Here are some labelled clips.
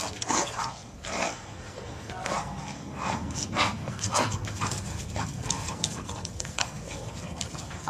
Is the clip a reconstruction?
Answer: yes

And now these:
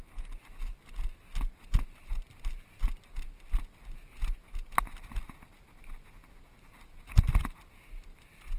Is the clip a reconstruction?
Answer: no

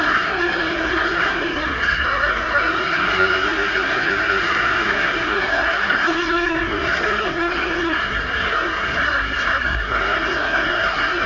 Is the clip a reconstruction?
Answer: yes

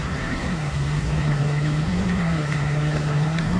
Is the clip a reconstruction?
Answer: yes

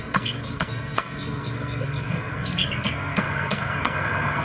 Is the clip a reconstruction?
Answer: yes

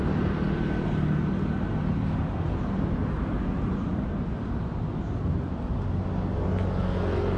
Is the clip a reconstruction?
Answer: no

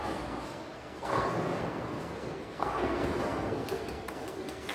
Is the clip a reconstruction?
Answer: yes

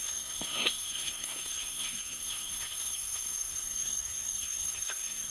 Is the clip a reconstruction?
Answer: yes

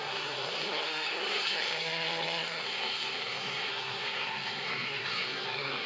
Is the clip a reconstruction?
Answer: yes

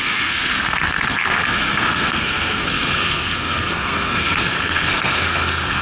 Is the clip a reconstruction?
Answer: yes